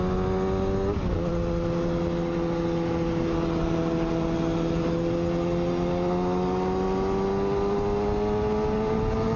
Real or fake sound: real